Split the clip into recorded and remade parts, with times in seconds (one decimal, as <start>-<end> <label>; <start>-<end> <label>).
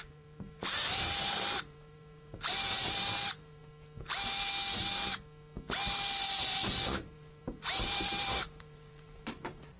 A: 0.0-3.6 remade; 3.6-6.3 recorded; 6.3-9.8 remade